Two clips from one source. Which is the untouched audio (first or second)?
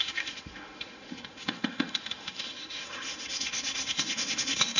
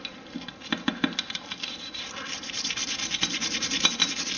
second